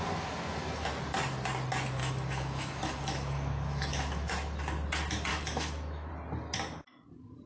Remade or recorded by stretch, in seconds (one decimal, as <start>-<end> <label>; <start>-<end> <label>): 0.0-2.0 recorded; 2.0-4.3 remade; 4.3-5.3 recorded; 5.3-6.1 remade; 6.1-7.5 recorded